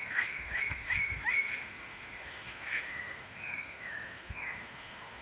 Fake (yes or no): yes